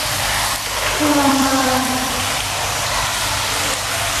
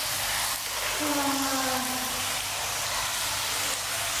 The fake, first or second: first